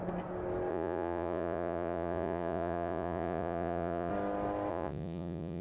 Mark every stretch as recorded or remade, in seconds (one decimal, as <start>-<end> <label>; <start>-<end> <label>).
0.0-0.7 recorded; 0.7-4.1 remade; 4.1-4.7 recorded; 4.7-5.6 remade